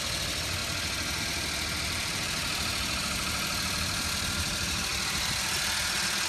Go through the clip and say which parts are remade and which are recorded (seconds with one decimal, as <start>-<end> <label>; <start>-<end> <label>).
0.0-0.6 remade; 0.6-1.2 recorded; 1.2-2.4 remade; 2.4-3.0 recorded; 3.0-4.9 remade; 4.9-6.3 recorded